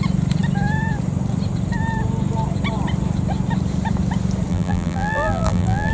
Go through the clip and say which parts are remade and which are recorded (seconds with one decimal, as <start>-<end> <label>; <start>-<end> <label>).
0.0-4.5 recorded; 4.5-5.9 remade